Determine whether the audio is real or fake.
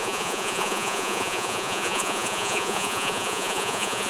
fake